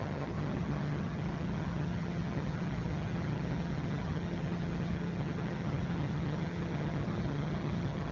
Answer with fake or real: fake